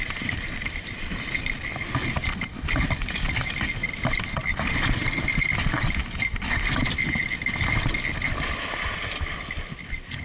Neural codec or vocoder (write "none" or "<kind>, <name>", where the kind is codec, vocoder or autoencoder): none